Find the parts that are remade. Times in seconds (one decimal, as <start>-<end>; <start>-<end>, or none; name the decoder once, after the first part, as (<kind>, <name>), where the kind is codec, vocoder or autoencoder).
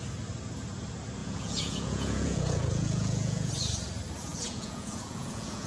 1.2-3.5 (vocoder, Vocos); 4.3-5.7